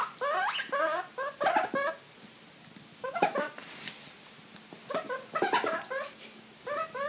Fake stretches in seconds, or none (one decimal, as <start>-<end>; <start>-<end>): 2.9-3.5